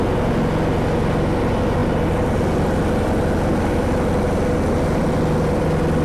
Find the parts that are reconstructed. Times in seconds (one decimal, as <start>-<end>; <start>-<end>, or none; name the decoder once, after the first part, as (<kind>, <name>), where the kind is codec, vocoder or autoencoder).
1.8-2.5 (vocoder, BigVGAN v2)